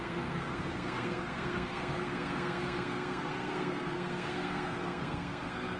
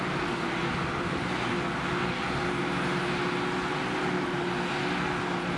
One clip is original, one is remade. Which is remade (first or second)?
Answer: first